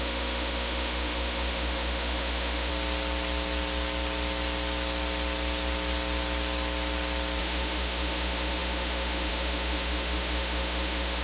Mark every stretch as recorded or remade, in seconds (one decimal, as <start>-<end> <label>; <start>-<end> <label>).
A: 0.0-2.7 remade; 2.7-7.4 recorded; 7.4-11.2 remade